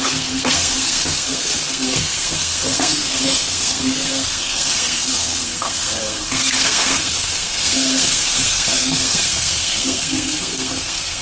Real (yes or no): no